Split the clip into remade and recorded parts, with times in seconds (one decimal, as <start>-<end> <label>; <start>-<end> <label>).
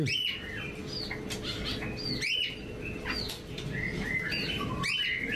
0.0-0.8 remade; 0.8-3.3 recorded; 3.3-5.4 remade